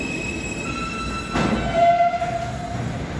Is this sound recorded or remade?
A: recorded